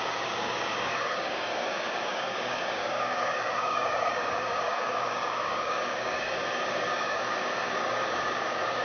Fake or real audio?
fake